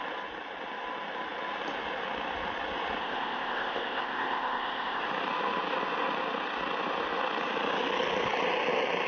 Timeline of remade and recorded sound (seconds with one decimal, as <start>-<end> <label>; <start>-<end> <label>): 0.0-3.0 recorded; 3.0-5.0 remade; 5.0-9.1 recorded